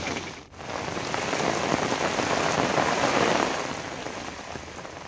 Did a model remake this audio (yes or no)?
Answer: no